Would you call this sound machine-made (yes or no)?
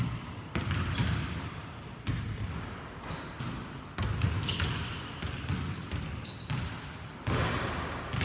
no